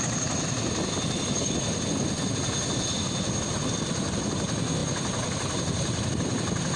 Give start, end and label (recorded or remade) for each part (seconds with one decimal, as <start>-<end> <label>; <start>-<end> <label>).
0.0-6.8 recorded